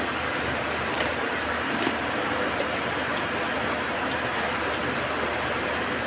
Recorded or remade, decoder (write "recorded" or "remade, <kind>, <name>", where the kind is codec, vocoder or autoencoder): recorded